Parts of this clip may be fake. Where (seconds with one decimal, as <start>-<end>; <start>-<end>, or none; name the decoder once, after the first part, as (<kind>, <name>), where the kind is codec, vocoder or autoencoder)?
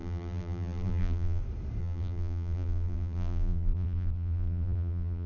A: 0.0-1.4 (vocoder, BigVGAN v2); 1.8-5.3